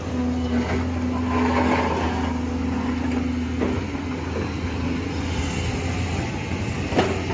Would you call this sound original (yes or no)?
yes